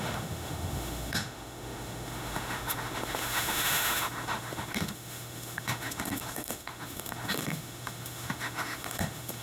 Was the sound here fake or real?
fake